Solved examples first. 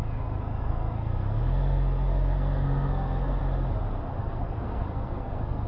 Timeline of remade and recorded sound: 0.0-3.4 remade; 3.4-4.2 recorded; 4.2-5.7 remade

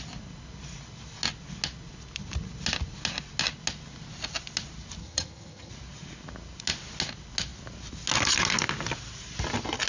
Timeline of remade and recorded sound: 0.0-5.0 recorded; 5.0-5.7 remade; 5.7-9.9 recorded

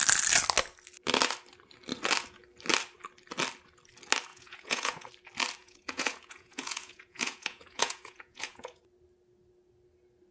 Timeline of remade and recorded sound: 0.0-4.3 recorded; 4.3-5.1 remade; 5.1-5.6 recorded; 5.6-8.8 remade; 8.8-10.3 recorded